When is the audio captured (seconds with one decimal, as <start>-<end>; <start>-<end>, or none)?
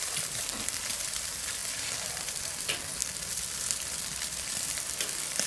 none